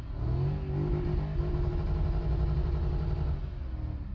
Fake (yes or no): no